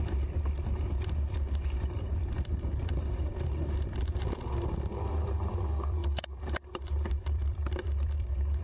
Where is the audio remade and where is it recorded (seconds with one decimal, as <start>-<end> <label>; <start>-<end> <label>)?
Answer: 0.0-8.6 remade